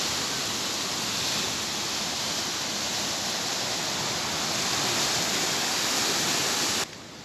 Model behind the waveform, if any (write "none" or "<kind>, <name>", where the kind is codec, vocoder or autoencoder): none